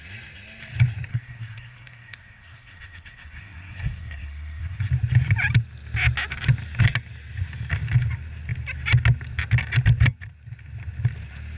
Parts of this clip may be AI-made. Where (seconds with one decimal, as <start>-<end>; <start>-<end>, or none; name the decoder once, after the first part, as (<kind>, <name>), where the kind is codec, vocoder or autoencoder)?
1.1-4.9 (codec, SNAC)